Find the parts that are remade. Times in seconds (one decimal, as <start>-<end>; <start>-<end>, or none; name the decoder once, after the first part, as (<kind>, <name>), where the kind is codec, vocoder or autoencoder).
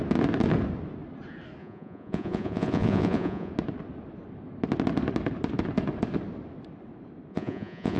1.6-3.5 (vocoder, Vocos); 7.3-8.0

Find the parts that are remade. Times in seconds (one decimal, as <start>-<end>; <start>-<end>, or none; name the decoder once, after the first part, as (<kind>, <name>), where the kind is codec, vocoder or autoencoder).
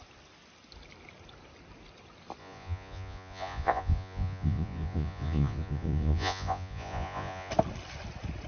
2.4-7.5 (vocoder, Vocos)